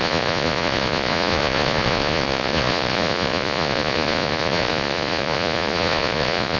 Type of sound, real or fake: fake